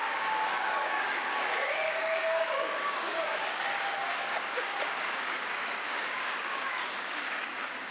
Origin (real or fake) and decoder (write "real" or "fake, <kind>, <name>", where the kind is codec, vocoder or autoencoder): fake, codec, DAC